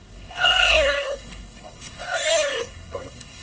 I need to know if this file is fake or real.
fake